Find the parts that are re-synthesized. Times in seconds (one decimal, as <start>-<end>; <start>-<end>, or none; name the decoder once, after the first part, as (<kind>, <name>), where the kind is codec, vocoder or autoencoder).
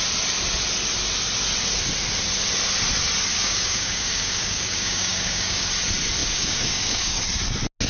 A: 3.3-5.7 (codec, DAC); 6.2-7.2